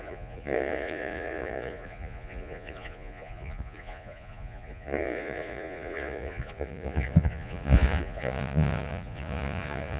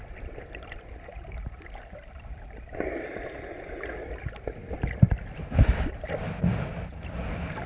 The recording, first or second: second